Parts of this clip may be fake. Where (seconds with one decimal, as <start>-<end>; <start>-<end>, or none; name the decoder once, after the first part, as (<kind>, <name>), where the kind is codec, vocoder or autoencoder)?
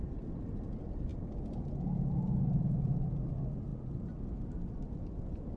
3.7-4.6 (vocoder, BigVGAN v2)